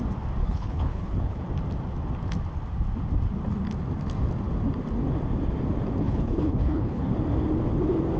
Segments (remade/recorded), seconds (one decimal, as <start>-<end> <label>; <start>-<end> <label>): 0.0-0.4 recorded; 0.4-1.4 remade; 1.4-6.0 recorded; 6.0-7.1 remade; 7.1-8.2 recorded